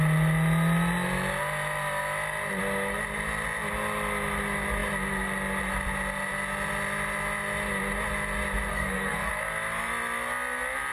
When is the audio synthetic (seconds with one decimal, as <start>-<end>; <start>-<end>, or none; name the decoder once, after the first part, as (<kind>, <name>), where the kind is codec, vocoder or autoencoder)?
8.7-9.3 (codec, SNAC)